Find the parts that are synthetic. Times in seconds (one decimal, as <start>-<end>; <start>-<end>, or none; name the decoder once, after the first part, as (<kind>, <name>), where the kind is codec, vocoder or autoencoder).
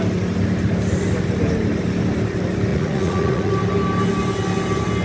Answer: 2.7-3.5 (vocoder, Vocos)